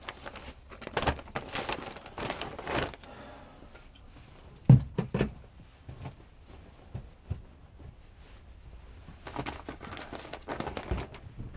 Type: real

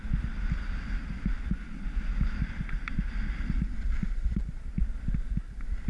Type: real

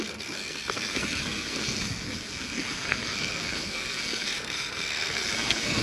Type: fake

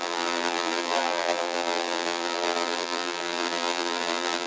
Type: fake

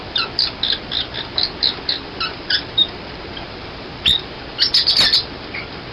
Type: fake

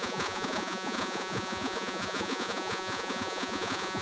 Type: fake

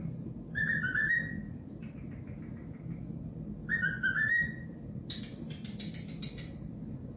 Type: real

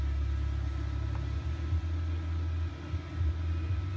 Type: real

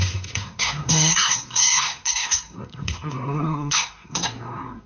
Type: fake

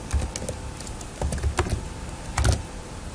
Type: real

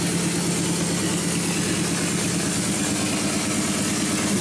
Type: real